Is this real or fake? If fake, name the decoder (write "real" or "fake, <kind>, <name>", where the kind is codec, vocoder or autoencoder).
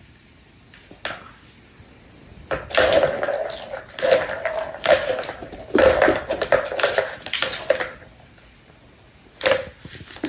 real